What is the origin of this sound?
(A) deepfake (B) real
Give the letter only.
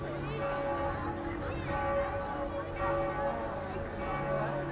B